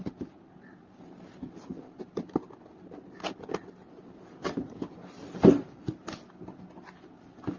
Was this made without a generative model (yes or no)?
yes